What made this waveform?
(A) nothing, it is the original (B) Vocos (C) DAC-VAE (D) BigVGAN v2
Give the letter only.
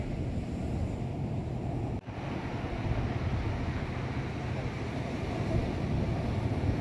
A